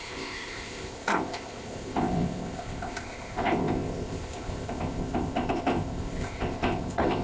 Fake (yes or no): yes